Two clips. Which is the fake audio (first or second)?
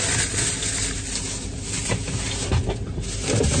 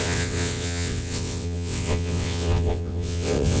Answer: second